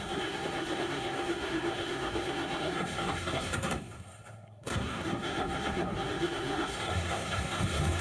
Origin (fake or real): fake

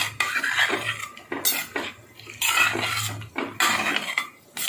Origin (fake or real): real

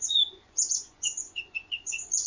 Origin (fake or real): fake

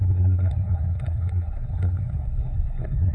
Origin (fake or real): fake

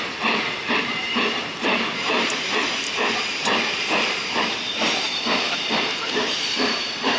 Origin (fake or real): fake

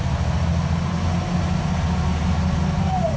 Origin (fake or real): real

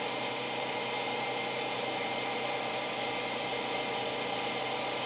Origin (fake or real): real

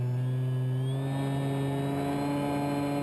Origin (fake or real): real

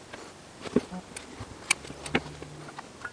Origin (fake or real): real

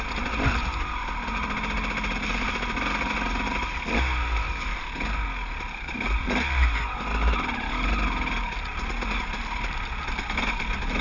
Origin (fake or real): real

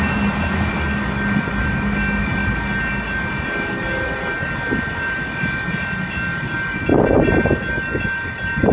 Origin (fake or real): real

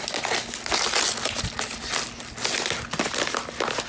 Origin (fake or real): real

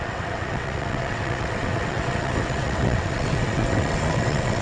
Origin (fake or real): fake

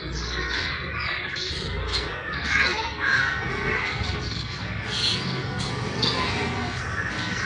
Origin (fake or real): fake